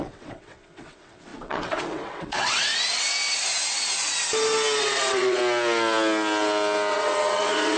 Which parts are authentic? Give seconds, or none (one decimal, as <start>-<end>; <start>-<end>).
2.7-4.8; 5.4-6.9

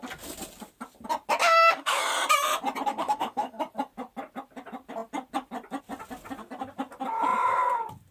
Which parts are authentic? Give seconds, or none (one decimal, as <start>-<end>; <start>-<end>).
0.0-1.4; 2.0-2.9; 3.6-8.1

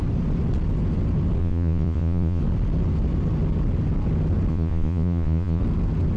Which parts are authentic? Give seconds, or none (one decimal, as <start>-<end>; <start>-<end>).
0.0-1.4; 2.4-4.5; 5.6-6.2

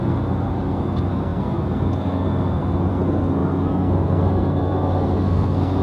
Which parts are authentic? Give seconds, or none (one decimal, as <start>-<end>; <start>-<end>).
none

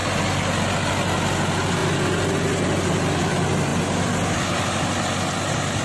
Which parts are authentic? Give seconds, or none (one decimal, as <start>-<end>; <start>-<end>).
0.0-5.8

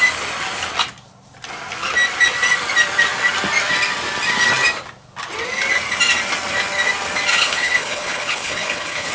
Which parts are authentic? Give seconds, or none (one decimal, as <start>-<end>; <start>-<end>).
0.0-7.3

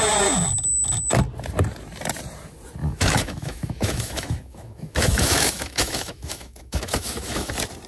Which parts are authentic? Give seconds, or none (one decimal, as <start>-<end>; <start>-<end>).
0.0-2.8; 7.5-7.9